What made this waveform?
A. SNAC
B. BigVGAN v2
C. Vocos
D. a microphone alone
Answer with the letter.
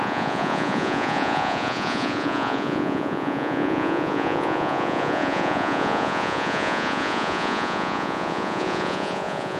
C